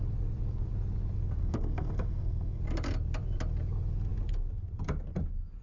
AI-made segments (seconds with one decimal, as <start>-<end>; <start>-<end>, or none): 1.4-2.6